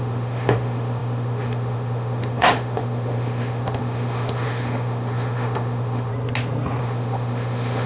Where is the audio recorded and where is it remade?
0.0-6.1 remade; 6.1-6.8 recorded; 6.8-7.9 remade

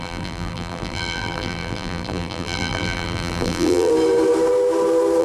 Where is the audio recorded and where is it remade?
0.0-3.9 remade; 3.9-5.2 recorded

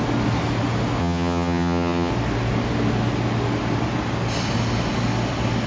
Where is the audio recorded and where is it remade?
0.0-1.0 recorded; 1.0-2.1 remade; 2.1-5.7 recorded

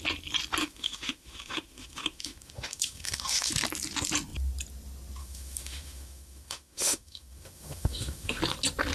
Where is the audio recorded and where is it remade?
0.0-0.6 recorded; 0.6-3.5 remade; 3.5-5.2 recorded; 5.2-8.4 remade; 8.4-8.9 recorded

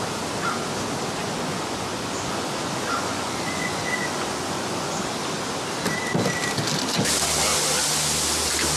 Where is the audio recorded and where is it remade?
0.0-1.2 recorded; 1.2-5.0 remade; 5.0-8.8 recorded

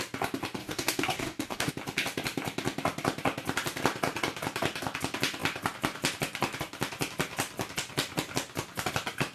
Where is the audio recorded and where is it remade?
0.0-0.6 recorded; 0.6-1.7 remade; 1.7-9.3 recorded

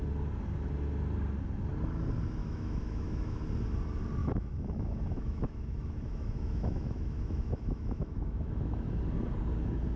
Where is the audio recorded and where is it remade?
0.0-2.4 recorded; 2.4-3.4 remade; 3.4-4.2 recorded; 4.2-9.0 remade; 9.0-10.0 recorded